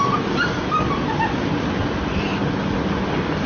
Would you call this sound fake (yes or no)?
no